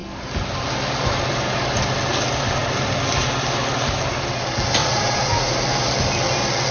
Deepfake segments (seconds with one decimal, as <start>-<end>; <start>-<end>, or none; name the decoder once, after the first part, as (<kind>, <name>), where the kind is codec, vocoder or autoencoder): 4.8-5.5 (vocoder, Vocos)